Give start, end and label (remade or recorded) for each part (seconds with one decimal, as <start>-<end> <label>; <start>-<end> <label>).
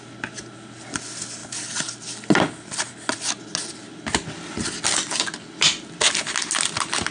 0.0-7.1 recorded